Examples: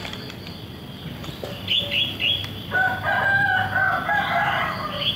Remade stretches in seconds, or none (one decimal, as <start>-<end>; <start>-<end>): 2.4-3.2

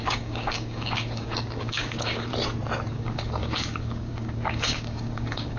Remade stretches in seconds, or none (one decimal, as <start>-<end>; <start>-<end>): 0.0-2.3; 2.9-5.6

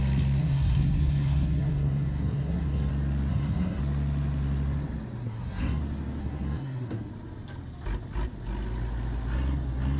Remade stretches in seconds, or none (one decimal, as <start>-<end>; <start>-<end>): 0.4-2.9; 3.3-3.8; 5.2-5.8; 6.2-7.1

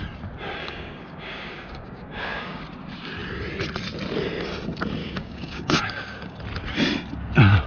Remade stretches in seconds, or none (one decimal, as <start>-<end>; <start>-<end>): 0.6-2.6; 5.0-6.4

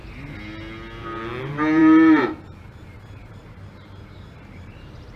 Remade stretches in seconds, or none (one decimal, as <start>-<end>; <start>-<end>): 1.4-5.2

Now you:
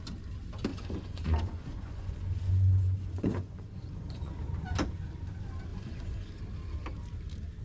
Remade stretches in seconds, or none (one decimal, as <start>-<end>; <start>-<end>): 0.7-4.4; 5.7-6.4